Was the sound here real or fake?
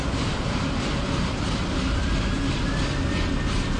real